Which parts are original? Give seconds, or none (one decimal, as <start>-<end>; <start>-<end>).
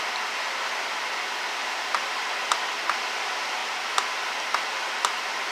0.0-1.6; 2.2-3.6